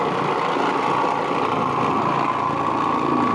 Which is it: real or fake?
real